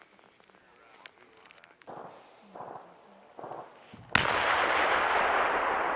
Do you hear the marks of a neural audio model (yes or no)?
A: no